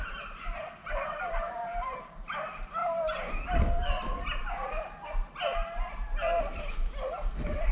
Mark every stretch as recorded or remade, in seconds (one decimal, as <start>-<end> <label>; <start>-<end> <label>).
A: 0.0-0.8 recorded; 0.8-2.0 remade; 2.0-7.7 recorded